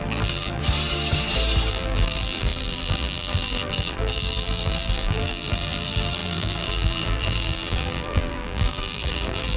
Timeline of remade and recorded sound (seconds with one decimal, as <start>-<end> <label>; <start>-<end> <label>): 0.0-0.6 remade; 0.6-1.7 recorded; 1.7-9.6 remade